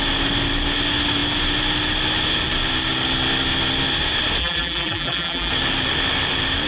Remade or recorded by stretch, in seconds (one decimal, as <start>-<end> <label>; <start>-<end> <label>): 0.0-4.4 recorded; 4.4-5.5 remade; 5.5-6.7 recorded